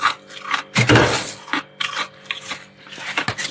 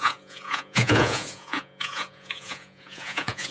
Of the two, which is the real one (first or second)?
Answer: first